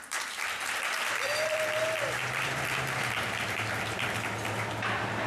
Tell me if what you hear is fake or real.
fake